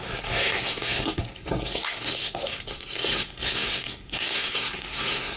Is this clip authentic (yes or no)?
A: no